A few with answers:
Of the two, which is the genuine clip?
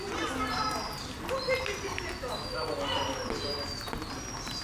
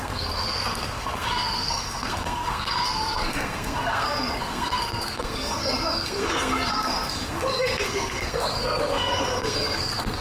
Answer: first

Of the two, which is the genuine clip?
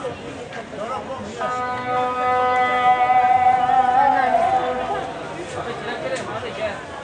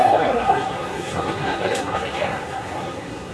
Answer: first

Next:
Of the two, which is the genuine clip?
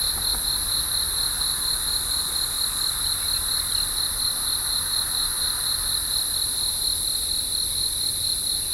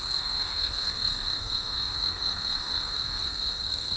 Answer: first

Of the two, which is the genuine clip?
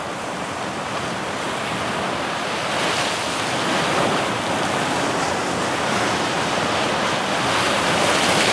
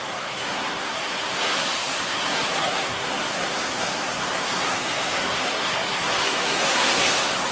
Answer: first